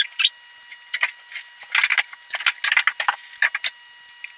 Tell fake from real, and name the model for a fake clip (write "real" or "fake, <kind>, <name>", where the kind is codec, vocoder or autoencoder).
real